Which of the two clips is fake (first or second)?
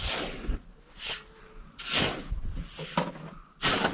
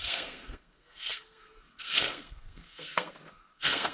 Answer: second